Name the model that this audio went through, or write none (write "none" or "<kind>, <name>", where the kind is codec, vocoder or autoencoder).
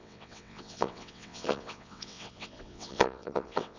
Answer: vocoder, WaveNeXt